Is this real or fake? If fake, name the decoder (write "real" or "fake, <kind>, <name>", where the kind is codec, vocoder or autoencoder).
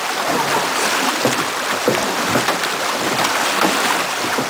real